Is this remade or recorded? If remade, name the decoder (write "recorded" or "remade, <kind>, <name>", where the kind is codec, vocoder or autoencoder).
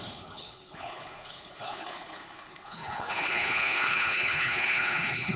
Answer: remade, codec, HILCodec